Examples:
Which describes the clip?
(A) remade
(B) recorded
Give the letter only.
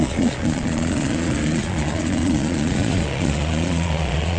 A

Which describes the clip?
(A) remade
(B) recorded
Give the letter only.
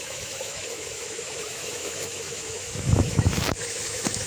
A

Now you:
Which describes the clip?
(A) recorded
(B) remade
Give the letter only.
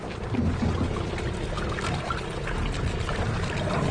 A